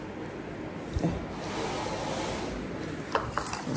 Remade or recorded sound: recorded